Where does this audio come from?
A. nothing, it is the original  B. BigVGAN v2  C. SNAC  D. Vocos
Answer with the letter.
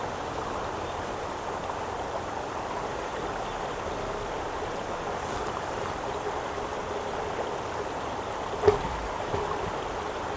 A